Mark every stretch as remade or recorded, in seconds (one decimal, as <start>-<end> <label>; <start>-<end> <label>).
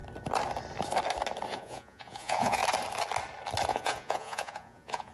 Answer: 0.0-1.5 recorded; 1.5-2.6 remade; 2.6-3.7 recorded; 3.7-5.1 remade